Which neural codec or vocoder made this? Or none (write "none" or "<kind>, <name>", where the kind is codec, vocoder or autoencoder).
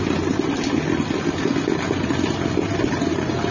none